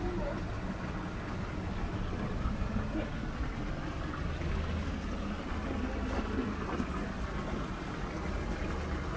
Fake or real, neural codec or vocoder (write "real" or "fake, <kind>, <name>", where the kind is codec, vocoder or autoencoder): real